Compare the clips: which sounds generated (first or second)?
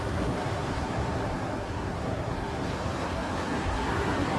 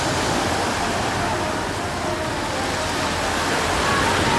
first